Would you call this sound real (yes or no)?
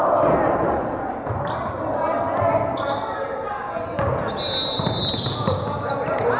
yes